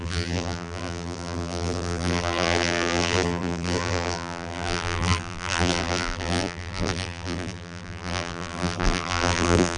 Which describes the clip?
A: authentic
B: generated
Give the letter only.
B